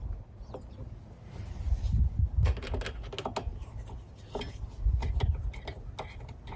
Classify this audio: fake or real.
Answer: real